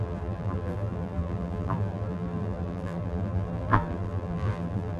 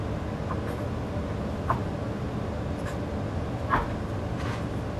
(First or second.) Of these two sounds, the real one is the second